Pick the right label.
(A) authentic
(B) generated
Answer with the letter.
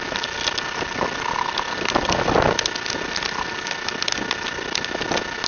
A